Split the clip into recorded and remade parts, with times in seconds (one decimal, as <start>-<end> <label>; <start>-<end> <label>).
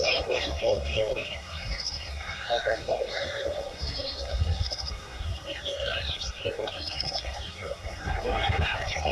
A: 0.0-9.1 remade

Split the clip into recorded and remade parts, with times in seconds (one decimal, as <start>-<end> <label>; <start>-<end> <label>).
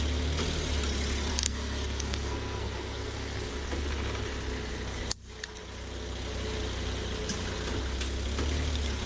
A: 0.0-1.3 recorded; 1.3-3.5 remade; 3.5-9.1 recorded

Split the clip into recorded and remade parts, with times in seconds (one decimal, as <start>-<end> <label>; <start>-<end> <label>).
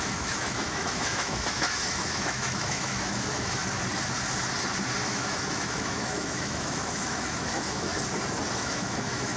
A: 0.0-3.6 remade; 3.6-5.1 recorded; 5.1-7.9 remade; 7.9-8.5 recorded; 8.5-9.4 remade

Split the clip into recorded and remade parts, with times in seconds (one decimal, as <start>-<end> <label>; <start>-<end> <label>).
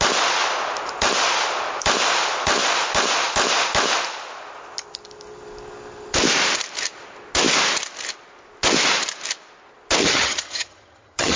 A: 0.0-10.0 recorded; 10.0-11.4 remade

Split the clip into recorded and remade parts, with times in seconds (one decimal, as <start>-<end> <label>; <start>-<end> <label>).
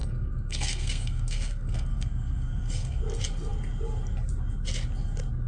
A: 0.0-3.0 remade; 3.0-5.5 recorded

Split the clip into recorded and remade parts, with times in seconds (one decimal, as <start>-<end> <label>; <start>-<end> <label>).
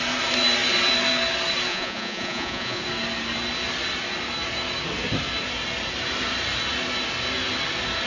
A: 0.0-1.7 recorded; 1.7-2.8 remade; 2.8-8.1 recorded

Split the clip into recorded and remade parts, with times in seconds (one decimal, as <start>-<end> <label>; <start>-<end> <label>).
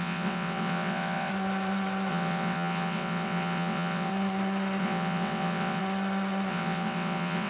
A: 0.0-1.3 remade; 1.3-2.1 recorded; 2.1-4.1 remade; 4.1-4.8 recorded; 4.8-5.8 remade; 5.8-6.5 recorded; 6.5-7.5 remade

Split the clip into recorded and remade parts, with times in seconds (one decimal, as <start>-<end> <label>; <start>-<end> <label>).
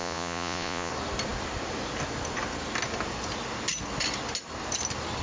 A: 0.0-0.9 remade; 0.9-5.2 recorded